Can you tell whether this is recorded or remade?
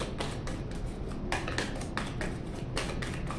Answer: recorded